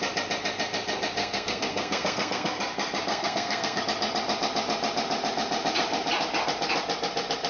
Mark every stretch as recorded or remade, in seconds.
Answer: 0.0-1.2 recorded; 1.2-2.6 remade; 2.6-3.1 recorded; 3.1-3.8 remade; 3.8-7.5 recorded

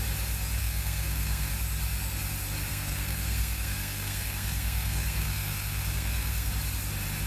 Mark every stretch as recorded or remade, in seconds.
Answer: 0.0-0.6 recorded; 0.6-1.5 remade; 1.5-2.7 recorded; 2.7-6.5 remade; 6.5-7.3 recorded

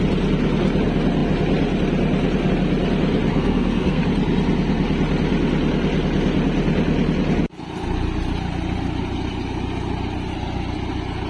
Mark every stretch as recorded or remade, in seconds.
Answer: 0.0-3.3 recorded; 3.3-4.0 remade; 4.0-11.3 recorded